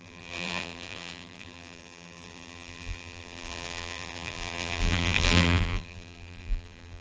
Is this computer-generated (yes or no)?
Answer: yes